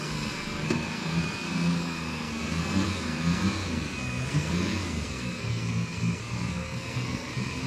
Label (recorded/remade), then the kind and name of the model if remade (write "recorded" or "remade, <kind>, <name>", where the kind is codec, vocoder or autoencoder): remade, codec, SNAC